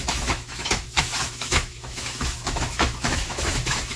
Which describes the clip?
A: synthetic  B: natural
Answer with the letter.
A